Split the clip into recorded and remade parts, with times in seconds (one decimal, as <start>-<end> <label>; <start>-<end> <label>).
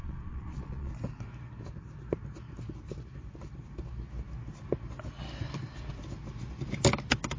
0.0-0.9 remade; 0.9-7.4 recorded